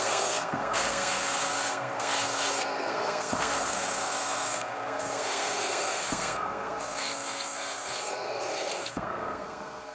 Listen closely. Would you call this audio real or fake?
fake